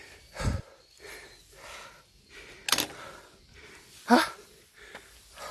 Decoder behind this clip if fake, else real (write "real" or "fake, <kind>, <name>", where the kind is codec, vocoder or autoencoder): real